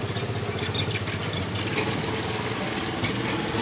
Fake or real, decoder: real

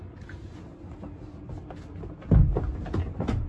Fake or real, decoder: real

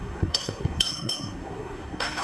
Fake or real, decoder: fake, codec, SNAC